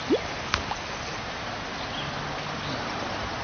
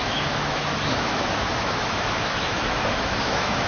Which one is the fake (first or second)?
second